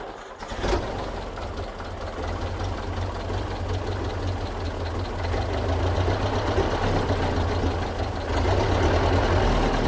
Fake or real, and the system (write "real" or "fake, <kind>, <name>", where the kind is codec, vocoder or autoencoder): real